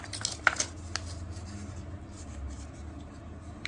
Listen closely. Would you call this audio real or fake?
real